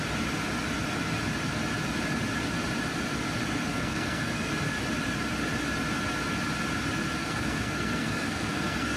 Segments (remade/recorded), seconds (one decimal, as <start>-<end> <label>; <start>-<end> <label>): 0.0-3.7 recorded; 3.7-4.5 remade; 4.5-7.2 recorded; 7.2-9.0 remade